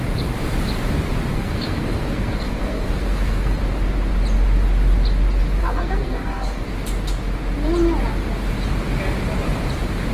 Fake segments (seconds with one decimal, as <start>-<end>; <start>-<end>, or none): 1.3-3.6; 5.6-6.6